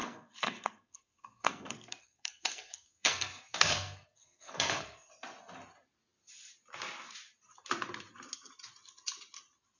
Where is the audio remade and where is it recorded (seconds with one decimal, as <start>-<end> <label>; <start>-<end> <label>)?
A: 0.0-5.1 remade; 5.1-9.8 recorded